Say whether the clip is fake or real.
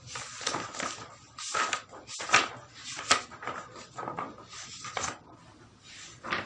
real